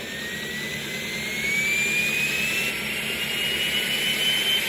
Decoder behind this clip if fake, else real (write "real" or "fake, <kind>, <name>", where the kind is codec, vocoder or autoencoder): real